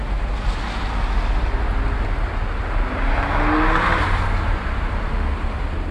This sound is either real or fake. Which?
real